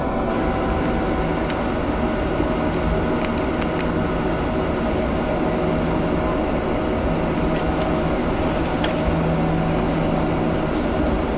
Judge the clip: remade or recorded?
recorded